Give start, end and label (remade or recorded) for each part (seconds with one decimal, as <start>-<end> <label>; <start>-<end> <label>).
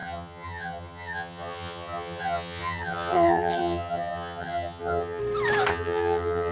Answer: 0.0-5.2 remade; 5.2-5.7 recorded; 5.7-6.5 remade